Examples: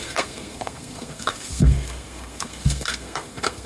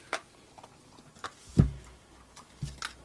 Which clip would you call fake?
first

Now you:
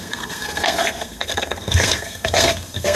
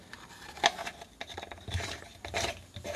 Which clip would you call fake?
first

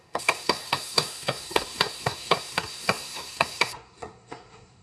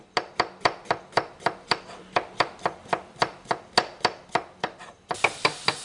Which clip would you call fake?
first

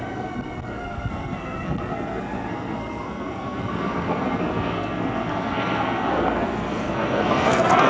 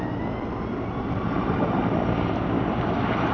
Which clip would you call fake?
first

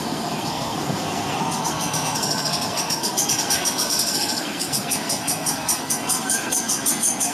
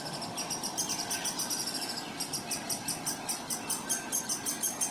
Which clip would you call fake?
first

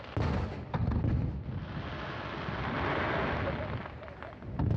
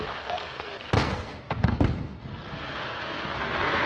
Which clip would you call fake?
second